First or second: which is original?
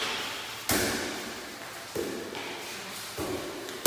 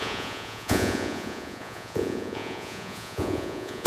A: first